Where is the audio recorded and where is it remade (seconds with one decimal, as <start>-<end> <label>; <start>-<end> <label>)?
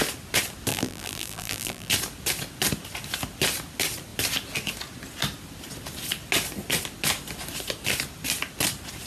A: 0.0-0.7 recorded; 0.7-1.9 remade; 1.9-9.1 recorded